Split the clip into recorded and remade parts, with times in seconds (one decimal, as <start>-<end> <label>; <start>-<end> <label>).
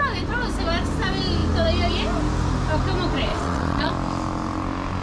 0.0-3.3 recorded; 3.3-3.9 remade; 3.9-5.0 recorded